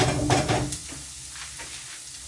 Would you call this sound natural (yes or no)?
yes